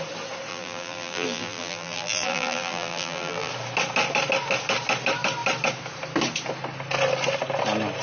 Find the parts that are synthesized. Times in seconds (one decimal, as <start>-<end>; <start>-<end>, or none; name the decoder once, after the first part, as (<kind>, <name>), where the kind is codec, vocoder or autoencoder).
0.5-3.5 (vocoder, BigVGAN v2)